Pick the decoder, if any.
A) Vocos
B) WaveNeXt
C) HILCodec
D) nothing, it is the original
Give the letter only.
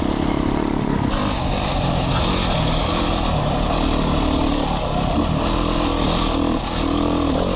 D